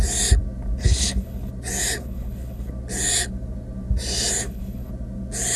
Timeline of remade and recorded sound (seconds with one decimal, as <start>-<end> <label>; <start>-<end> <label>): 0.0-0.8 recorded; 0.8-1.5 remade; 1.5-2.0 recorded; 2.0-2.7 remade; 2.7-4.4 recorded; 4.4-4.9 remade; 4.9-5.6 recorded